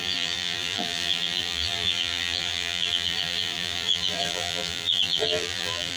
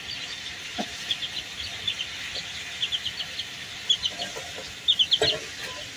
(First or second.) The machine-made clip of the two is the first